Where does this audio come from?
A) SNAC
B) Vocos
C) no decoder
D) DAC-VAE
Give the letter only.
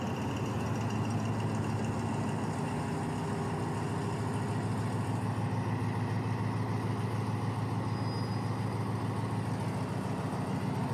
C